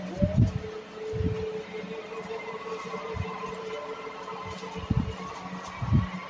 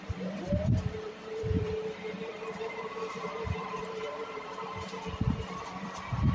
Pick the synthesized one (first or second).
second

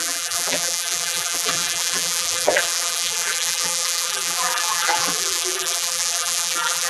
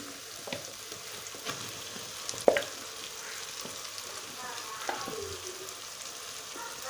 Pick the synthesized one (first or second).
first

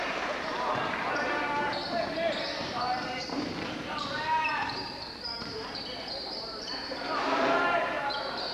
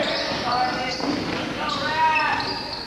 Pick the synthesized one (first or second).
first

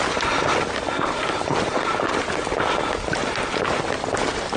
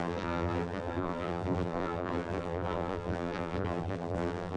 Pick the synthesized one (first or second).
second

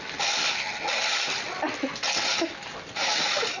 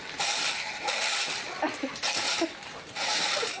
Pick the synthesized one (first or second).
second